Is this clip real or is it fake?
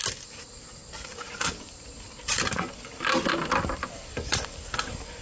real